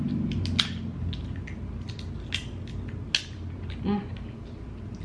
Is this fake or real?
real